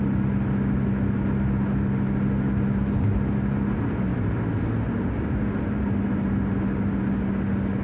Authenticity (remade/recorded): recorded